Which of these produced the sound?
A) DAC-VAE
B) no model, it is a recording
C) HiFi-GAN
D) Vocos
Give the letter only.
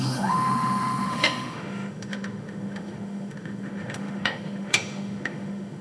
A